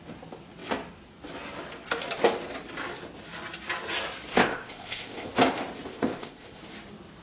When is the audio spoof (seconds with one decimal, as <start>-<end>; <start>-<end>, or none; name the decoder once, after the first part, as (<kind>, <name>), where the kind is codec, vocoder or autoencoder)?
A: 4.3-5.3 (codec, ZipCodec); 5.9-6.6